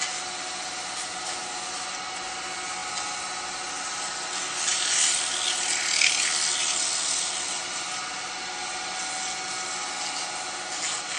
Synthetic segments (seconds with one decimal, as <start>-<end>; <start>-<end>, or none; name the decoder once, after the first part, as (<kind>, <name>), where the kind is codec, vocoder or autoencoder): none